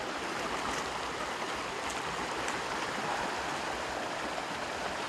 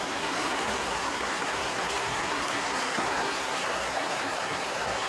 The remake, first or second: second